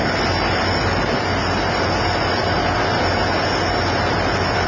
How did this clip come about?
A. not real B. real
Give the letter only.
B